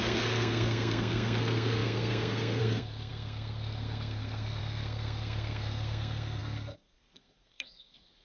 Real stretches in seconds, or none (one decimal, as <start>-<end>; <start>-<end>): none

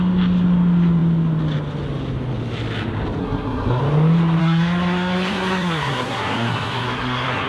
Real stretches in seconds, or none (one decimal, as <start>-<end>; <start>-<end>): 0.0-3.2; 3.8-4.4

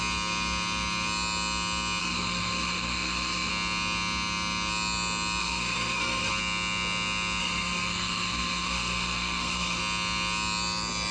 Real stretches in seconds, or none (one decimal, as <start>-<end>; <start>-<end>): 0.0-2.0; 3.5-5.4; 6.3-7.4; 9.8-11.1